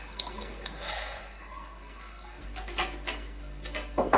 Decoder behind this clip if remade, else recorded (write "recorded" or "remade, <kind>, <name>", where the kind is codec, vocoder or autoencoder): remade, codec, SNAC